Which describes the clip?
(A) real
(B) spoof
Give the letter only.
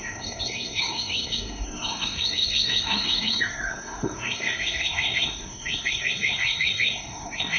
B